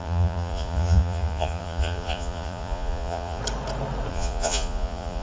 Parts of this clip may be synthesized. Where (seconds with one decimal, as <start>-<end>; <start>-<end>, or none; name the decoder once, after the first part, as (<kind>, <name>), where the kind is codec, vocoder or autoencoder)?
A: 0.0-3.4 (vocoder, Vocos); 4.1-5.2